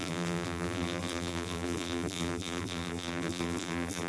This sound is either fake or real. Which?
fake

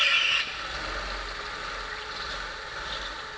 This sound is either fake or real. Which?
real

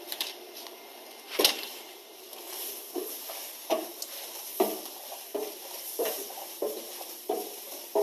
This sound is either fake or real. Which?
fake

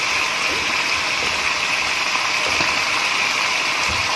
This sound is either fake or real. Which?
real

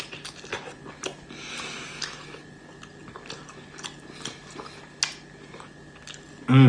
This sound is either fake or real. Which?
real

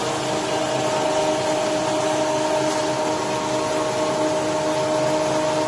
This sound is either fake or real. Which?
real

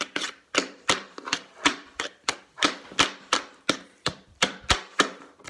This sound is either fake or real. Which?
fake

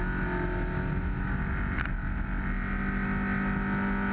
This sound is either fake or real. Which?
real